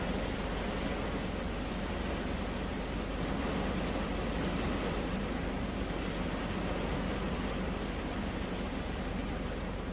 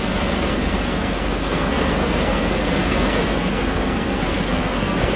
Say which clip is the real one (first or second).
first